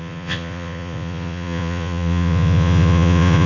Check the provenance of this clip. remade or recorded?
remade